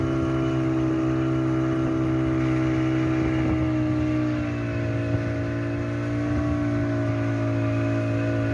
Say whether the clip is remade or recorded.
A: recorded